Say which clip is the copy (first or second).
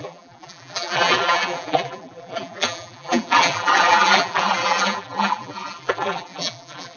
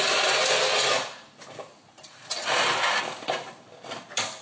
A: first